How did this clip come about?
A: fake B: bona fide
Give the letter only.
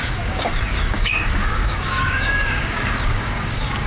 A